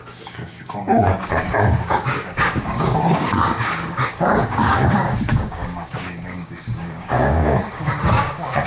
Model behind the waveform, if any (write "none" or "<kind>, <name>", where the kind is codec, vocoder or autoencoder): codec, DAC